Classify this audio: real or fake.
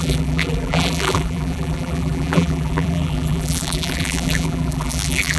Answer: fake